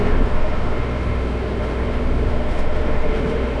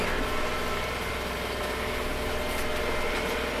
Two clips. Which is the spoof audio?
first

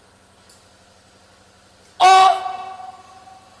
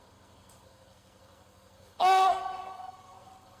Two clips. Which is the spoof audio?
second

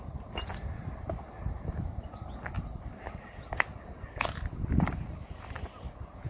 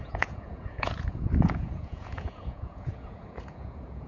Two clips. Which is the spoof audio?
second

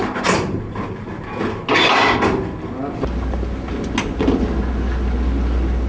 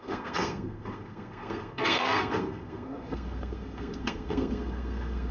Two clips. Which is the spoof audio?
second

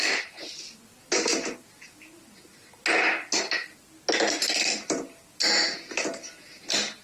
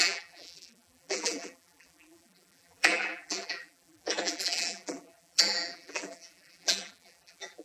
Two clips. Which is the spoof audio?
second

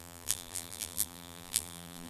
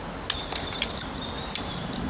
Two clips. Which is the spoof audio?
first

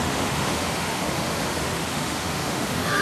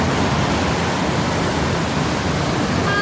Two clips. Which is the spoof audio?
first